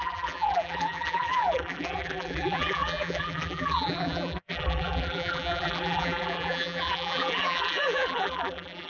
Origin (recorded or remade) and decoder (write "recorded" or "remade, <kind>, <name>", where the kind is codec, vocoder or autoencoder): remade, vocoder, BigVGAN v2